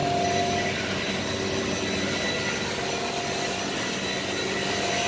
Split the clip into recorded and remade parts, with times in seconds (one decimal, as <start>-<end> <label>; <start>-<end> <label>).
0.0-5.1 recorded